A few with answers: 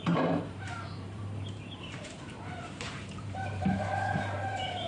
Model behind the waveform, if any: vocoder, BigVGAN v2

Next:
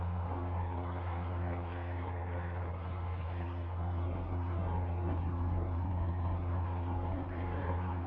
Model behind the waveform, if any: codec, SNAC